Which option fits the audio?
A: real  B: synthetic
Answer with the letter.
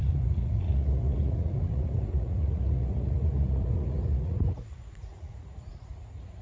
B